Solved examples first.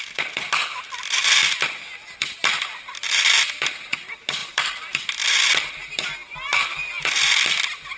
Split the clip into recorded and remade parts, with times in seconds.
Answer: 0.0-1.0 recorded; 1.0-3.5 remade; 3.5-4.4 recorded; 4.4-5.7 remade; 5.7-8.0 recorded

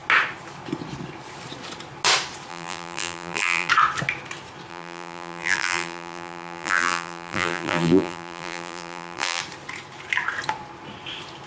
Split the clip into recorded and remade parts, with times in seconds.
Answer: 0.0-2.5 recorded; 2.5-3.7 remade; 3.7-4.7 recorded; 4.7-9.4 remade; 9.4-11.5 recorded

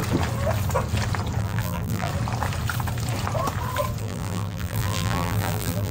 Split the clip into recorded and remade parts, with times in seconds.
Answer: 0.0-1.4 recorded; 1.4-2.1 remade; 2.1-4.0 recorded; 4.0-5.9 remade

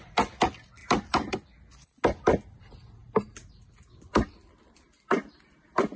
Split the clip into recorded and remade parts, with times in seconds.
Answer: 0.0-3.0 recorded; 3.0-3.7 remade; 3.7-6.0 recorded

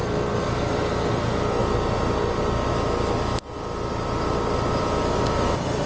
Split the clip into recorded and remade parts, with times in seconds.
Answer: 0.0-1.6 recorded; 1.6-2.7 remade; 2.7-3.3 recorded; 3.3-5.9 remade

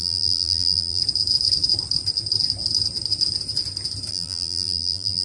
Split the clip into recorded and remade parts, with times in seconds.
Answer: 0.0-1.0 remade; 1.0-4.1 recorded; 4.1-5.2 remade

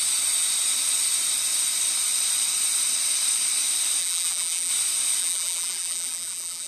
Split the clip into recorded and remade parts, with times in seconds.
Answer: 0.0-4.0 recorded; 4.0-4.7 remade; 4.7-5.2 recorded; 5.2-6.7 remade